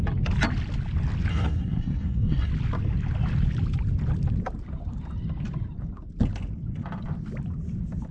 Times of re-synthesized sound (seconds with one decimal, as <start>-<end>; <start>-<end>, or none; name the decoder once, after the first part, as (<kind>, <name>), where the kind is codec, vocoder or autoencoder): 1.3-2.5 (codec, SNAC)